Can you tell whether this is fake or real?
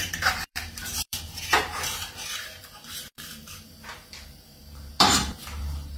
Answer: fake